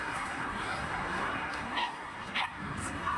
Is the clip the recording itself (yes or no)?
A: no